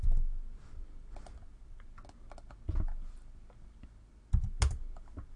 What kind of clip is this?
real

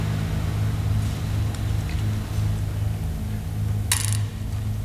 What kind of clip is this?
real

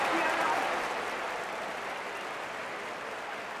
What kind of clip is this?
real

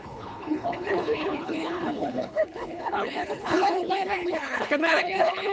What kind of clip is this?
fake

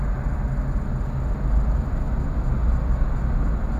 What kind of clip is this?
real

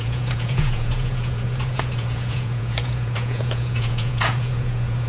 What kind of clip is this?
fake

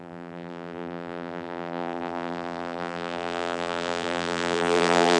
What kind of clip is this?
fake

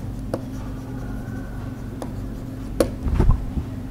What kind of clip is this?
real